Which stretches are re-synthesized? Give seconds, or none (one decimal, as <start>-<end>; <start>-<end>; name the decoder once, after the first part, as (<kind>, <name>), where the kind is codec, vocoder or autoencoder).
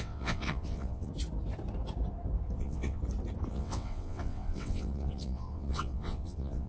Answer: 0.0-1.1 (vocoder, WaveNeXt); 2.6-3.0; 3.5-6.7